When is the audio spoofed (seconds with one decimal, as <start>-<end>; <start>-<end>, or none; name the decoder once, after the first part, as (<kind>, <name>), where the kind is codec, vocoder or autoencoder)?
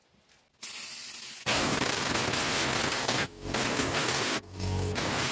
1.4-2.1 (codec, DAC); 2.9-5.3